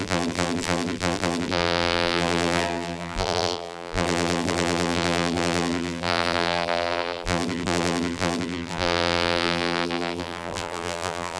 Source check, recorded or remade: remade